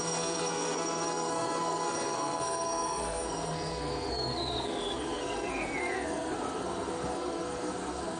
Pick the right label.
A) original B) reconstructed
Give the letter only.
B